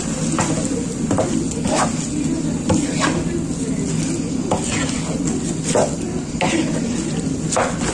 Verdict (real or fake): real